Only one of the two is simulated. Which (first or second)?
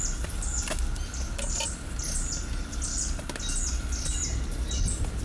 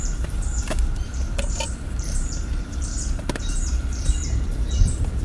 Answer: second